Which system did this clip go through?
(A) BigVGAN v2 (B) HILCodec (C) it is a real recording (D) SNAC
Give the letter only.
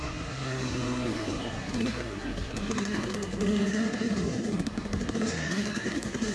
D